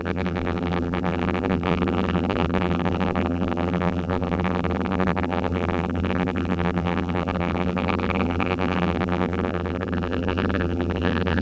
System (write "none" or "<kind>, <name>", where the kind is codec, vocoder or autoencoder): vocoder, BigVGAN v2